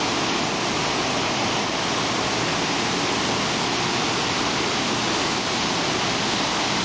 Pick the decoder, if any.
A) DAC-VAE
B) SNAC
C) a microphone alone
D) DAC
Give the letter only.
C